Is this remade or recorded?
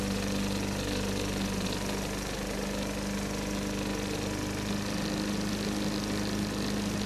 recorded